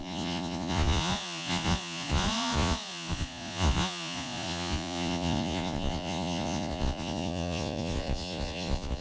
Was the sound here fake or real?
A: fake